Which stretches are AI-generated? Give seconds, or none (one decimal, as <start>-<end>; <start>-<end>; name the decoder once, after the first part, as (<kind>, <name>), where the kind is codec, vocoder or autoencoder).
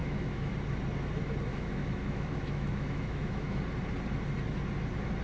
0.0-0.5 (autoencoder, DAC-VAE); 1.5-3.6